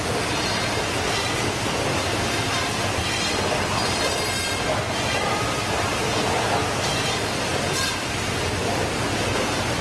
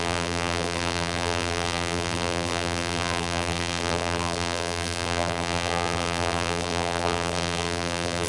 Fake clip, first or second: second